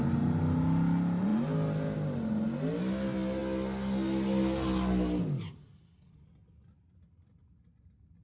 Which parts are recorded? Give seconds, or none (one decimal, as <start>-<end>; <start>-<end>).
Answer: 0.0-8.2